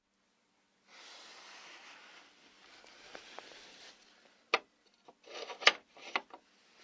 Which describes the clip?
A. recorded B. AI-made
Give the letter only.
A